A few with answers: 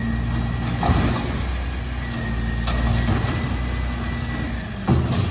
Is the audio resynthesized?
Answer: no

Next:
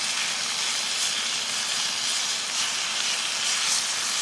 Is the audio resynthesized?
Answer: no